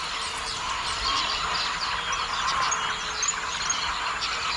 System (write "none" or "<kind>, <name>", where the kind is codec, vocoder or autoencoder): none